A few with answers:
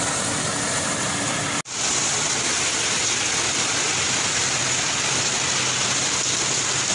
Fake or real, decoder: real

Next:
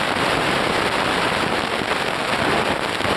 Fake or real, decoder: real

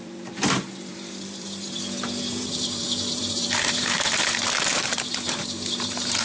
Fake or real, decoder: fake, vocoder, BigVGAN v2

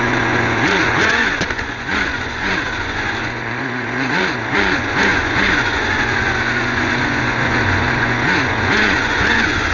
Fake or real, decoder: fake, vocoder, Vocos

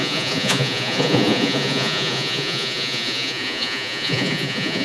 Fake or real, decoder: fake, vocoder, Vocos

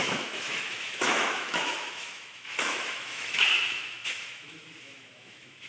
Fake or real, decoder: fake, autoencoder, DAC-VAE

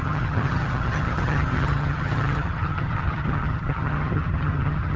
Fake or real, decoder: fake, vocoder, HiFi-GAN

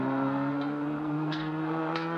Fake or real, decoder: fake, codec, SNAC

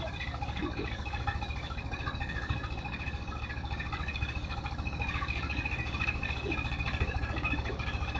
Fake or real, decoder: fake, codec, DAC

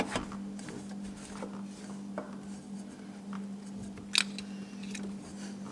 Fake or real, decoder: real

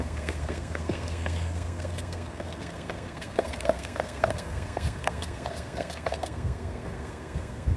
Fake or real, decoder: fake, codec, SNAC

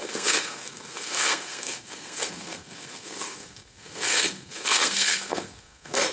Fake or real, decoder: fake, codec, SNAC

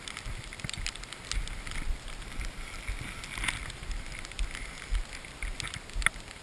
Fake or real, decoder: real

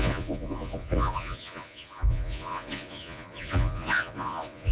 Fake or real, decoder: fake, vocoder, Vocos